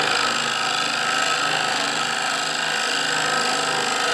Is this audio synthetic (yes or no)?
no